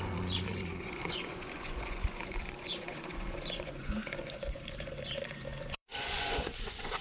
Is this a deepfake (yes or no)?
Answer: yes